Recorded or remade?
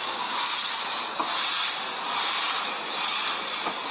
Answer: recorded